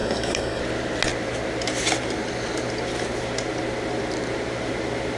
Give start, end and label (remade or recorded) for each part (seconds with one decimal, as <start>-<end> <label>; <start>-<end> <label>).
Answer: 0.0-0.6 remade; 0.6-5.2 recorded